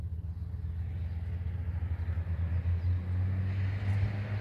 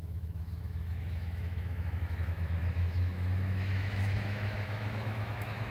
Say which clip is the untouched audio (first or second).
first